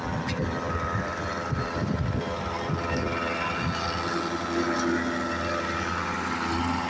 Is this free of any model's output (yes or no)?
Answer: yes